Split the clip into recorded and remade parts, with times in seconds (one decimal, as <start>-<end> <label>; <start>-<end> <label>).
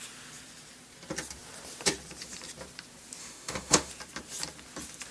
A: 0.0-3.2 recorded; 3.2-3.9 remade; 3.9-5.1 recorded